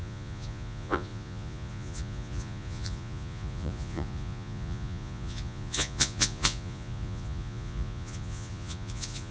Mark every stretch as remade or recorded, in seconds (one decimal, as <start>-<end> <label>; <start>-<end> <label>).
0.0-9.3 remade